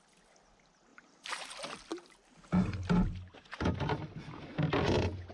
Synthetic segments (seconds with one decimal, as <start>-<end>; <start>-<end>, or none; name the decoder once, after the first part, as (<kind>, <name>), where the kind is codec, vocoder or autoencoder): none